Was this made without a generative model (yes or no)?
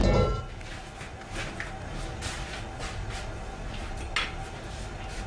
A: yes